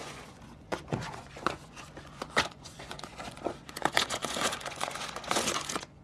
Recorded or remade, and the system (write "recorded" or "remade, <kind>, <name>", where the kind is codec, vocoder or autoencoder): remade, vocoder, Vocos